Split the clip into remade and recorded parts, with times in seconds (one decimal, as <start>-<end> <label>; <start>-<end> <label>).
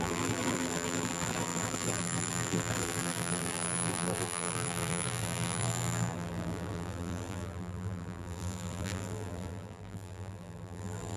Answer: 0.0-11.2 remade